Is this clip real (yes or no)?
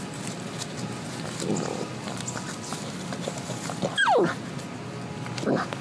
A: yes